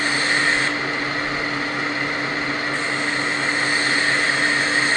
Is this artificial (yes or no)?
no